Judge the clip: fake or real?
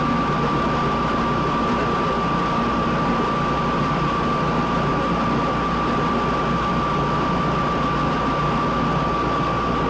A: real